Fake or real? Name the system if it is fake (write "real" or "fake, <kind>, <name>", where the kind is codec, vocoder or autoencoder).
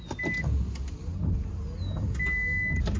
real